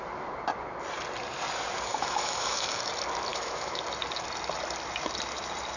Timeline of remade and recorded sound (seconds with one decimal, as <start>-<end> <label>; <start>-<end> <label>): 0.0-1.9 recorded; 1.9-2.9 remade; 2.9-3.3 recorded; 3.3-3.8 remade; 3.8-5.8 recorded